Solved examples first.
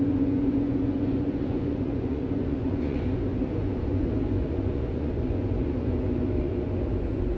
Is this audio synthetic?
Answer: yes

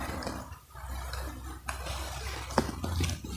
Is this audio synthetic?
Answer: no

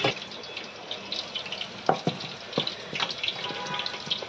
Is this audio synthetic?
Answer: no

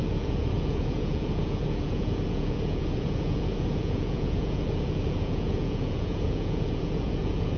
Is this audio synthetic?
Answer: yes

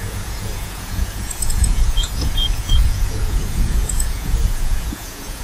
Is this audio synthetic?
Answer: yes